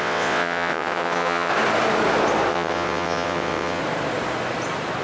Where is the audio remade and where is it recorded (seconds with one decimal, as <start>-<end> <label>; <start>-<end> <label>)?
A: 0.0-1.5 remade; 1.5-2.5 recorded; 2.5-3.8 remade; 3.8-5.0 recorded